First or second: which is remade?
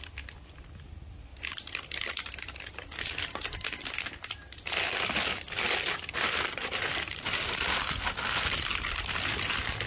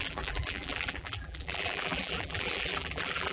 second